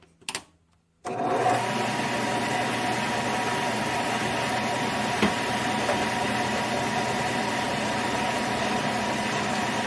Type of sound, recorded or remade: recorded